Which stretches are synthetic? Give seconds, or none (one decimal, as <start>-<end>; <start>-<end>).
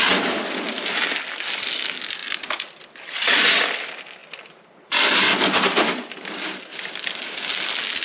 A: none